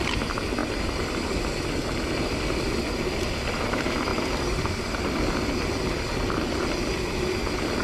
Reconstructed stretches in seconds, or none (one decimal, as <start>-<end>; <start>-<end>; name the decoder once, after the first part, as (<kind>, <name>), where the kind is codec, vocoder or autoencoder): 0.6-1.3 (vocoder, BigVGAN v2); 4.1-4.9